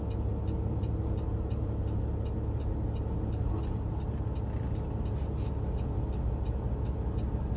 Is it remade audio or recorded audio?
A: recorded